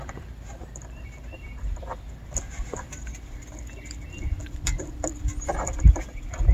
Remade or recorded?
remade